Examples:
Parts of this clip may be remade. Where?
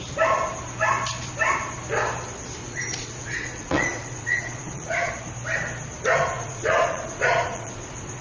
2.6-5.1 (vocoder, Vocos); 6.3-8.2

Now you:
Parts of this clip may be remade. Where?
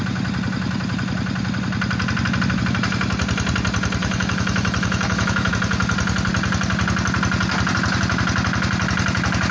4.0-5.5 (autoencoder, DAC-VAE)